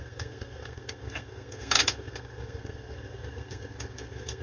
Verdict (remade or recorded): remade